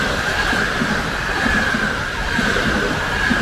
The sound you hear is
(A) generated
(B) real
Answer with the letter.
A